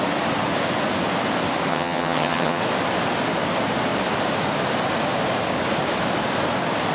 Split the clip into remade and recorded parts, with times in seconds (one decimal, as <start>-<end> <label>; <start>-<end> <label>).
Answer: 0.0-1.7 recorded; 1.7-2.6 remade; 2.6-6.9 recorded